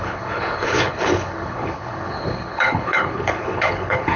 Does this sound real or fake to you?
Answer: fake